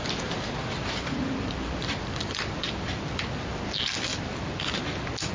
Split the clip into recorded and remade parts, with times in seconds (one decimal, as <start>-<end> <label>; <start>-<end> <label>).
0.0-3.2 remade; 3.2-4.1 recorded; 4.1-4.6 remade; 4.6-5.3 recorded